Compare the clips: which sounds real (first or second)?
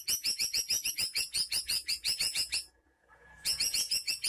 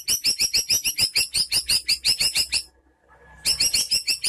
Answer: second